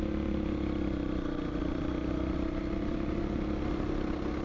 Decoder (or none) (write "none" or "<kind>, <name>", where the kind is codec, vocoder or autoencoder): none